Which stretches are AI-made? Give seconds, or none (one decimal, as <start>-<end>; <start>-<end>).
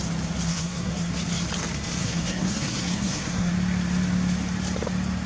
0.5-1.1; 2.0-3.5